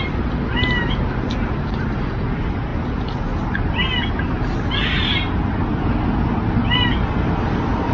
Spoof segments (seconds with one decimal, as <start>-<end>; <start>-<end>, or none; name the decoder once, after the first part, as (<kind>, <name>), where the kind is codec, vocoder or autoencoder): 2.7-3.3 (vocoder, Vocos)